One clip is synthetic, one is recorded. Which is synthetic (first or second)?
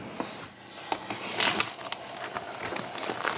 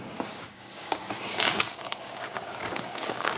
second